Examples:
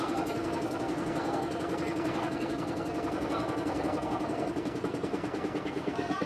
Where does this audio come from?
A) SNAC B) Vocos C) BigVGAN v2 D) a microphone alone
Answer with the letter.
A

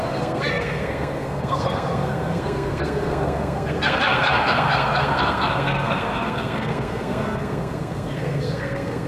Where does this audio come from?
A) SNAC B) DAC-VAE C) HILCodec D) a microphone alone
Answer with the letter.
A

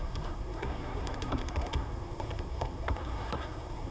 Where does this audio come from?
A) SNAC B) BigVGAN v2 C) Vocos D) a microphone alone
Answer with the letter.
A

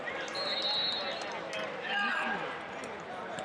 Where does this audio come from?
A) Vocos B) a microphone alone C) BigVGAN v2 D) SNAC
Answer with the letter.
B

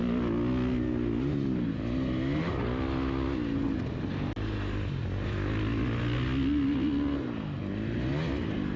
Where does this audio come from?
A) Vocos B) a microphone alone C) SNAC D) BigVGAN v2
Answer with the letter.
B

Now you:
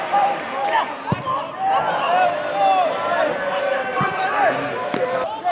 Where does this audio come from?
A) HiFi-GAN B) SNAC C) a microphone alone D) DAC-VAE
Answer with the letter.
C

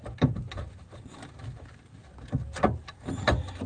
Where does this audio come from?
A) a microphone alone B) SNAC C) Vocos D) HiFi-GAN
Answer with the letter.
A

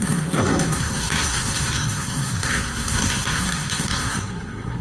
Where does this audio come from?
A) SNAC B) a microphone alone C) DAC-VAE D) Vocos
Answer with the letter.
A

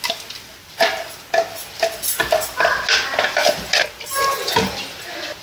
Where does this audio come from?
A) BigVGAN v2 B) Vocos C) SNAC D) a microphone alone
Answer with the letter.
D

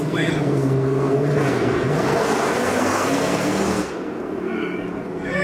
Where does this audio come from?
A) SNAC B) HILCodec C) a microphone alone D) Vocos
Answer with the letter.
A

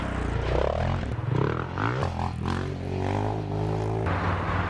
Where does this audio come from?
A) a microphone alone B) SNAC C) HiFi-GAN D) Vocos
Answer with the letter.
A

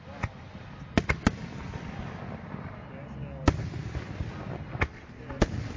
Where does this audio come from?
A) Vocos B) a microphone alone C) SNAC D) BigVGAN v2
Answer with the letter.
B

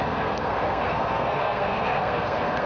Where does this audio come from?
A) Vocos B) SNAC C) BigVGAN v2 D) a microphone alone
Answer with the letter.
B